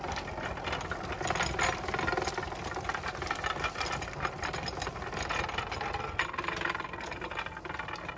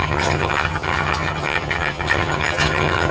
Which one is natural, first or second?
first